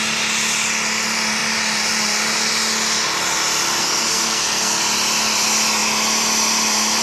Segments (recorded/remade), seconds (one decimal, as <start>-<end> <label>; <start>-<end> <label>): 0.0-3.8 recorded; 3.8-4.8 remade; 4.8-7.0 recorded